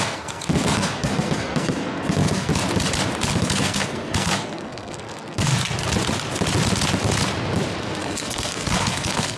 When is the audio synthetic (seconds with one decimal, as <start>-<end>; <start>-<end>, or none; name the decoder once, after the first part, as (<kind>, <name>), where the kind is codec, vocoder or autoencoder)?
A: 0.0-2.5 (codec, SNAC); 3.4-5.5; 7.8-9.4